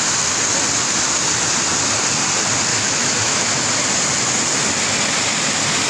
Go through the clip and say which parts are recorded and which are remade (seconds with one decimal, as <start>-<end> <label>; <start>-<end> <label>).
0.0-2.7 recorded; 2.7-3.5 remade; 3.5-5.9 recorded